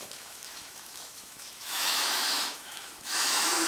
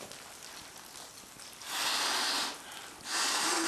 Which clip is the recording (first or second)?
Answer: second